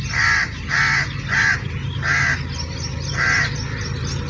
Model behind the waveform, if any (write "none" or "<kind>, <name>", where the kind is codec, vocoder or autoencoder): none